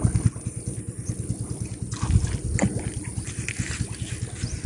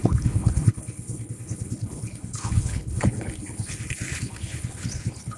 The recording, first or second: first